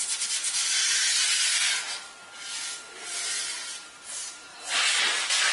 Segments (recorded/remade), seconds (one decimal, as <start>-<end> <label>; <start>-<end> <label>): 0.0-4.5 recorded; 4.5-5.5 remade